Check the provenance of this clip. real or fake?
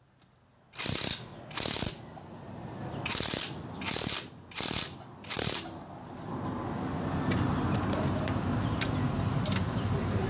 real